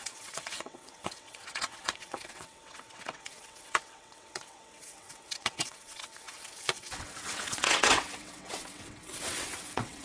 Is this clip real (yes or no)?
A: no